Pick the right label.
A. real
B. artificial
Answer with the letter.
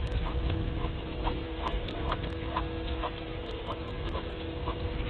B